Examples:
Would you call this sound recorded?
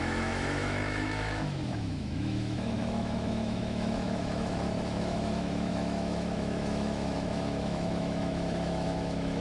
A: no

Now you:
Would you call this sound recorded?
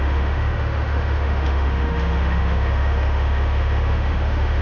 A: no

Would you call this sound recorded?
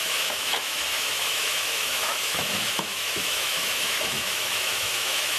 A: no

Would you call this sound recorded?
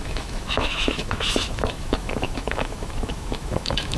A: no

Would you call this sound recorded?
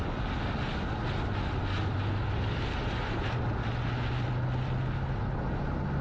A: yes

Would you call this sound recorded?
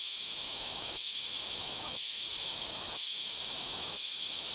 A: no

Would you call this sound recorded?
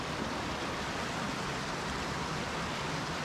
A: yes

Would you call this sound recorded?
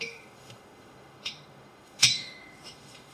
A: no